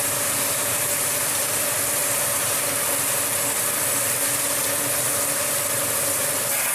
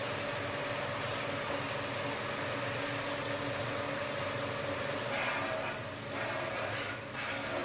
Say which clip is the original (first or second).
second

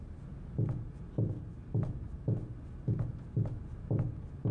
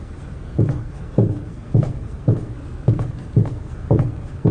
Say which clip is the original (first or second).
first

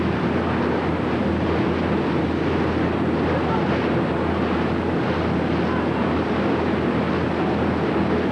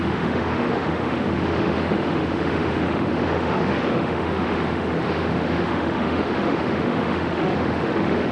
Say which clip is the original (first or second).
first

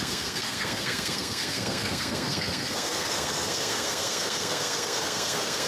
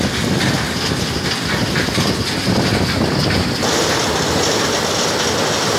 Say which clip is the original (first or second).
second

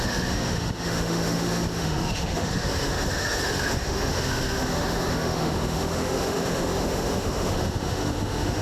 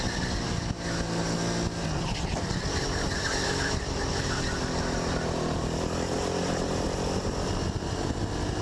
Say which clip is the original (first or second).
second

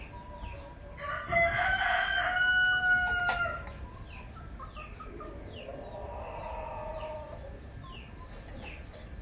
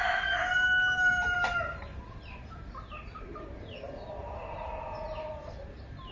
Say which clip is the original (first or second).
first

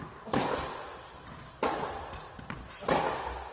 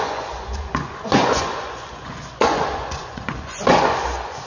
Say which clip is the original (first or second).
first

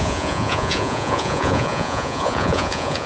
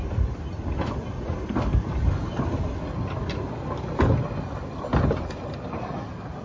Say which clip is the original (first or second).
second